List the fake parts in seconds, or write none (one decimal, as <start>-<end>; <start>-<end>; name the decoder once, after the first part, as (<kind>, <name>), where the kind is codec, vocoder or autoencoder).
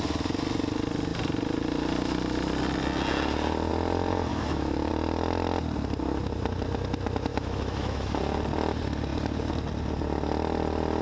4.3-4.9 (autoencoder, DAC-VAE); 7.3-8.2